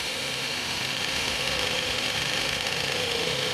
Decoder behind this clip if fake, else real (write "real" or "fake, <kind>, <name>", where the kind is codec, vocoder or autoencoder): fake, autoencoder, DAC-VAE